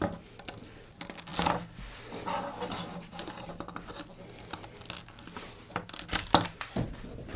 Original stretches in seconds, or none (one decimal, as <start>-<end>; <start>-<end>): 0.0-7.4